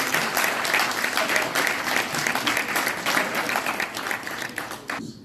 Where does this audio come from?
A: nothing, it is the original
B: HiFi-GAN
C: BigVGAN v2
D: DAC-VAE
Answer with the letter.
C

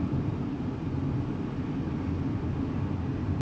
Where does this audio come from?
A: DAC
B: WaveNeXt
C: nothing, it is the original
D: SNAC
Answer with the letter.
C